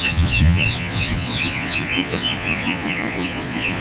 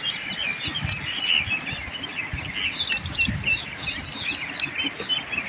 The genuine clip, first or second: second